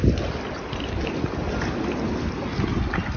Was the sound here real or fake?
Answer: real